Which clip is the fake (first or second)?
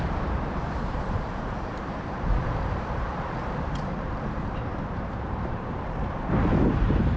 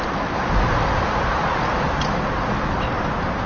first